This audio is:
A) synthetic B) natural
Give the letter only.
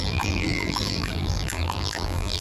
A